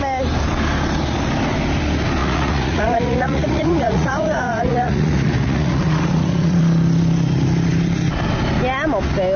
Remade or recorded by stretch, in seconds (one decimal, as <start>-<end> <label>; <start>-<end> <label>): 0.0-2.2 recorded; 2.2-6.6 remade; 6.6-9.4 recorded